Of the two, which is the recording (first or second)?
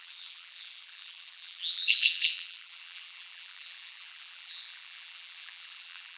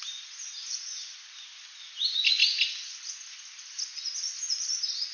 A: second